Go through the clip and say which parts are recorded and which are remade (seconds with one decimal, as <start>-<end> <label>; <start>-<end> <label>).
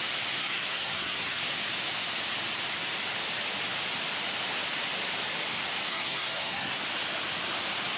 0.0-0.4 recorded; 0.4-1.4 remade; 1.4-5.9 recorded; 5.9-6.8 remade; 6.8-8.0 recorded